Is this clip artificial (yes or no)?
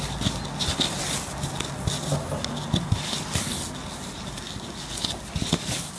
no